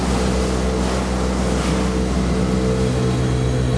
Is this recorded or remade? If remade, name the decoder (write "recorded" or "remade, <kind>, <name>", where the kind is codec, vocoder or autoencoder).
recorded